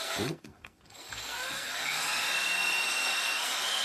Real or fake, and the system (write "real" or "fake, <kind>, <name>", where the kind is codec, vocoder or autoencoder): fake, codec, SNAC